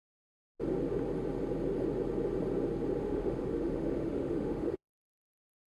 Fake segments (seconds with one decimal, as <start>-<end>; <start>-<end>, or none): 3.0-5.7